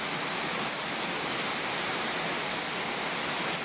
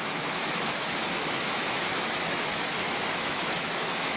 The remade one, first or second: second